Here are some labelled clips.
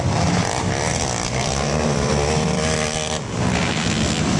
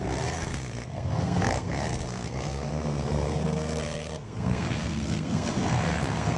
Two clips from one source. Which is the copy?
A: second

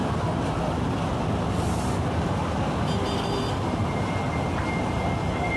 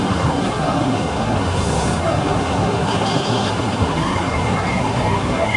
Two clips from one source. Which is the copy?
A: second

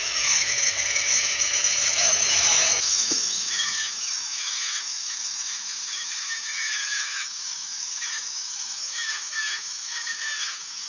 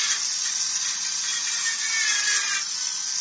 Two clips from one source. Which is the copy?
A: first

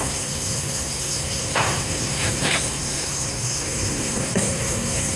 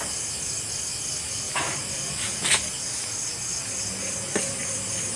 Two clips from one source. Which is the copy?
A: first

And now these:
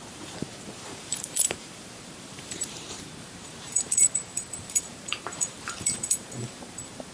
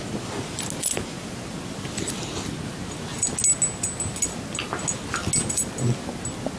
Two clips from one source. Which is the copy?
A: first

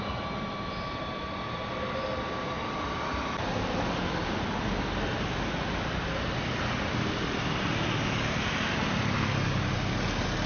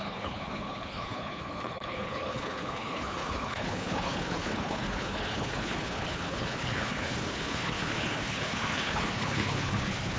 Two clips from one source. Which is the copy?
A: second